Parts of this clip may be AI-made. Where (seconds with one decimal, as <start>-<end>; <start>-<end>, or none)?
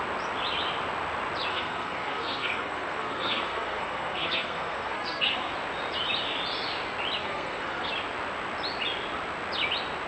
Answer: 1.5-5.5; 7.2-7.9